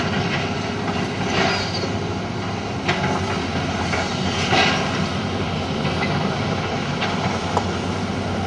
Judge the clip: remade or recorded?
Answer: recorded